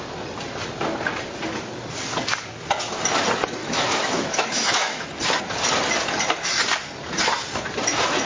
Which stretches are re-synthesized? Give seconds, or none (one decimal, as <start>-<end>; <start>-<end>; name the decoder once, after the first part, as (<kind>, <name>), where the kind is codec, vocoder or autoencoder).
3.6-5.0 (autoencoder, DAC-VAE)